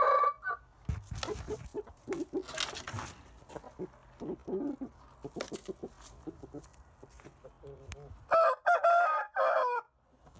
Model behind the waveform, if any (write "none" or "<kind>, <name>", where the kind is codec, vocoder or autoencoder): none